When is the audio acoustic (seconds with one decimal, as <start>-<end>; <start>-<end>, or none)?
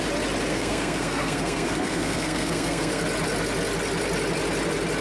0.0-0.5; 3.0-5.0